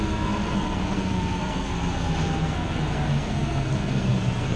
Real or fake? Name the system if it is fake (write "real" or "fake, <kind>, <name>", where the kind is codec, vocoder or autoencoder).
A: fake, codec, SNAC